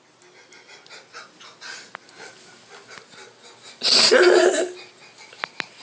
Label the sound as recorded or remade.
recorded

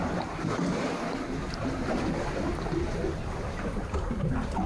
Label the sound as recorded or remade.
recorded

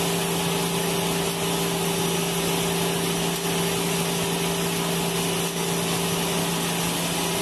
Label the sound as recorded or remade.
recorded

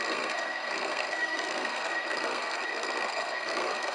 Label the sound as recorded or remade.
remade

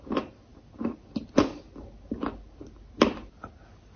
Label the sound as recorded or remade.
recorded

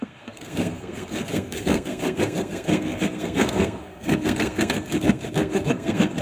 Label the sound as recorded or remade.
remade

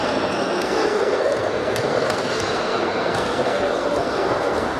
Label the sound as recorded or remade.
remade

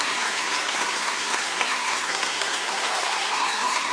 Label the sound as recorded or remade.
remade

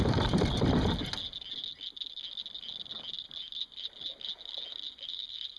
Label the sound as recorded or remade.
recorded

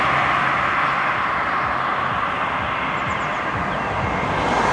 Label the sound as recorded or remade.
recorded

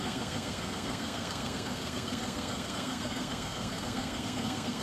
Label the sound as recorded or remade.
remade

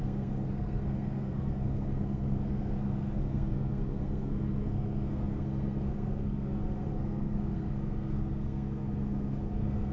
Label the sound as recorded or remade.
remade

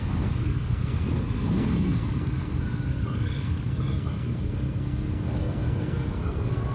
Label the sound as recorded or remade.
remade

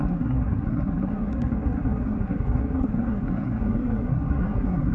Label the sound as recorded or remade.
remade